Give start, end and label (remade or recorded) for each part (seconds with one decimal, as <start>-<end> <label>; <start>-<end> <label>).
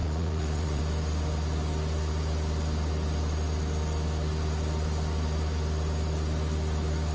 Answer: 0.0-0.8 remade; 0.8-7.1 recorded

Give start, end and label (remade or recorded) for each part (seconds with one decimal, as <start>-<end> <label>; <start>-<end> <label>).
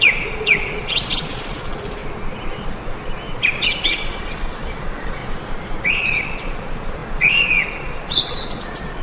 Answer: 0.0-2.0 remade; 2.0-3.5 recorded; 3.5-5.2 remade; 5.2-5.9 recorded; 5.9-9.0 remade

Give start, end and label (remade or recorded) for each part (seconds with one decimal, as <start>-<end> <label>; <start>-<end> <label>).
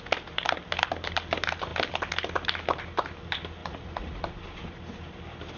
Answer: 0.0-3.6 recorded; 3.6-4.2 remade; 4.2-5.6 recorded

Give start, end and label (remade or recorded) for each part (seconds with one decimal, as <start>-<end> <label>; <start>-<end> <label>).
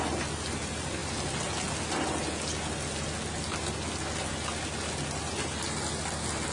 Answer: 0.0-6.5 recorded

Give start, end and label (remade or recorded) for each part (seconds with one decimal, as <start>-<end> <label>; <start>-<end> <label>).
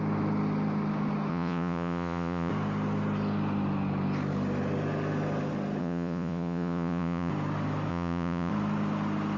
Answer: 0.0-1.3 recorded; 1.3-2.5 remade; 2.5-5.8 recorded; 5.8-7.3 remade; 7.3-7.9 recorded; 7.9-8.5 remade; 8.5-9.4 recorded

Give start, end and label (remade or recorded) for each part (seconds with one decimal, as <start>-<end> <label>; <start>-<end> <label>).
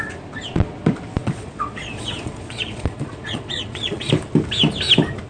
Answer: 0.0-1.2 recorded; 1.2-4.1 remade; 4.1-5.3 recorded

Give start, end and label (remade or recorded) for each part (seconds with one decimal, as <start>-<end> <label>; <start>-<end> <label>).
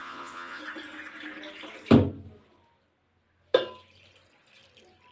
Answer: 0.0-0.6 remade; 0.6-5.1 recorded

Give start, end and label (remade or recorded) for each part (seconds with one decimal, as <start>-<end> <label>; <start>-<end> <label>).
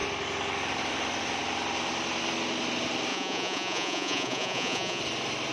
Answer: 0.0-3.1 recorded; 3.1-5.0 remade; 5.0-5.5 recorded